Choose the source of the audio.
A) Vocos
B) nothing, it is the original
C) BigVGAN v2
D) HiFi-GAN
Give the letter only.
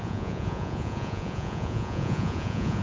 A